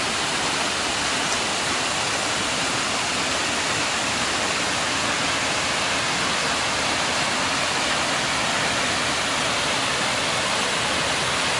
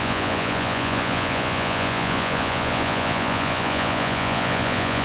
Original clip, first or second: first